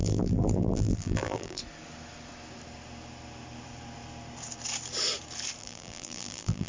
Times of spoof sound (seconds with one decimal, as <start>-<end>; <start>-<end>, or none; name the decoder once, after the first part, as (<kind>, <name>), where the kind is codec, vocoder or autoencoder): 0.0-1.6 (vocoder, BigVGAN v2); 5.6-6.7